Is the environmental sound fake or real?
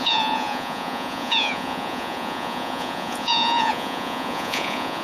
fake